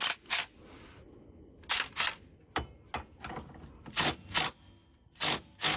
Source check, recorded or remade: recorded